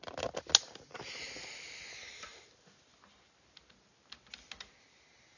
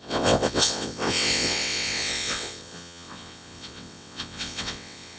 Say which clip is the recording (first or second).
first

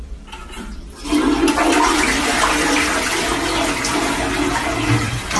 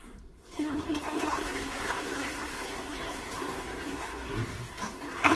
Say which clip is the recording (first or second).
first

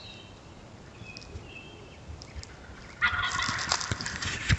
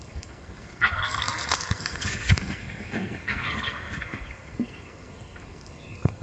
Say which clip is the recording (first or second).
first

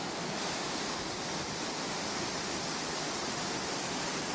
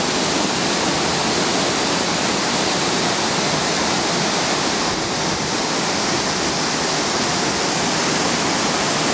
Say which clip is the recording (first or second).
second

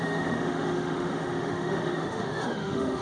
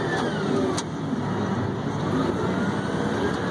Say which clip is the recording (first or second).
second